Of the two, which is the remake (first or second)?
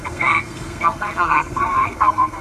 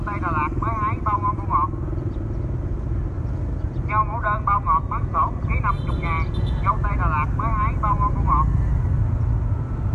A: first